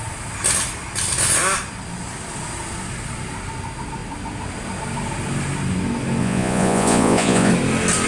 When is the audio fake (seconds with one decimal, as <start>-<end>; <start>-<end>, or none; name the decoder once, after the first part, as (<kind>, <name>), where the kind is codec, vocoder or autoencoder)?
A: 6.2-7.5 (vocoder, Vocos)